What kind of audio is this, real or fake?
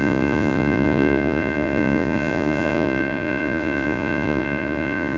fake